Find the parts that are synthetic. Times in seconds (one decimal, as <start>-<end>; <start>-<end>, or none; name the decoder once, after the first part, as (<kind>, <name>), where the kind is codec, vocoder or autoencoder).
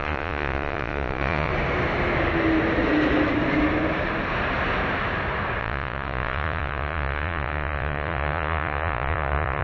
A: 0.0-1.5 (vocoder, Vocos); 5.6-9.6